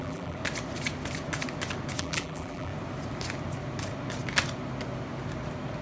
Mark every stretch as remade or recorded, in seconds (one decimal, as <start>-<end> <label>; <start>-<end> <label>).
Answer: 0.0-0.4 remade; 0.4-2.0 recorded; 2.0-2.7 remade; 2.7-5.8 recorded